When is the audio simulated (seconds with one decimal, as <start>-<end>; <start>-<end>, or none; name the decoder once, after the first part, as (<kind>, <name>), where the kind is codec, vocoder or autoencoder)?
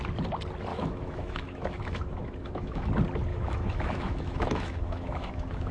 0.7-2.9 (autoencoder, DAC-VAE); 3.3-5.7